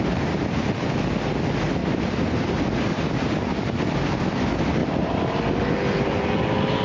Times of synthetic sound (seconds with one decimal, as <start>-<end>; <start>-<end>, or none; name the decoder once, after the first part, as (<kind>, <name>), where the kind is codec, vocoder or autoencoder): 1.8-4.0 (vocoder, BigVGAN v2); 4.8-6.3